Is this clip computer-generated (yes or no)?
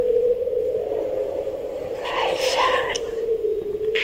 no